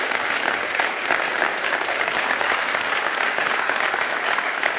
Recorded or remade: remade